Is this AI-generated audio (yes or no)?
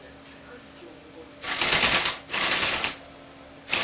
no